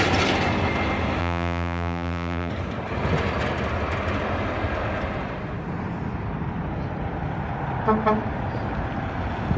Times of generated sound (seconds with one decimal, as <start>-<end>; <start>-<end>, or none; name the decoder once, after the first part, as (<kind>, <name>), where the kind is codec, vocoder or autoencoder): 1.2-2.5 (vocoder, BigVGAN v2)

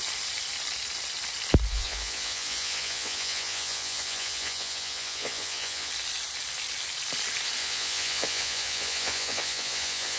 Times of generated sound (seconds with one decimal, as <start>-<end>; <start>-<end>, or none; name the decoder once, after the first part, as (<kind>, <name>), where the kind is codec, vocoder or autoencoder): 1.7-5.9 (vocoder, Vocos); 7.6-10.2

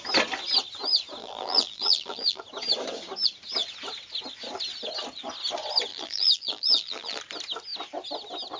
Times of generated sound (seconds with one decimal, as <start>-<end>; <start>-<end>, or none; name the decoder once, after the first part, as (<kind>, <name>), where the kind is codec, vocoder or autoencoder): 1.2-2.4 (vocoder, BigVGAN v2); 5.9-7.2

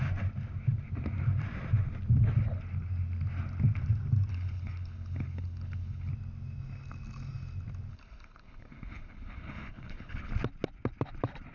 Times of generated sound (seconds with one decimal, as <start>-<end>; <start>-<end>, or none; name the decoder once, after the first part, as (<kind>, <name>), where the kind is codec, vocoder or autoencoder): 4.3-6.1 (codec, HILCodec); 7.9-10.3

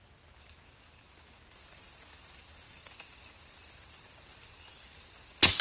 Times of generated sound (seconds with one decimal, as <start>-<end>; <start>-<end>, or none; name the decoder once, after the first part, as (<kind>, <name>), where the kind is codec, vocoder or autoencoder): none